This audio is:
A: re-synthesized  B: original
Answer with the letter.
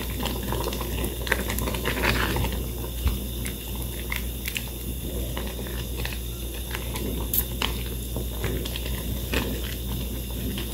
B